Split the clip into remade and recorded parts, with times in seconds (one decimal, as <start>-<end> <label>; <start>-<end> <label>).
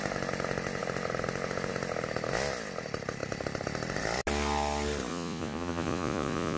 0.0-5.1 recorded; 5.1-6.6 remade